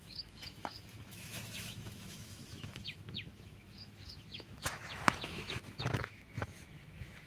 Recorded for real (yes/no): no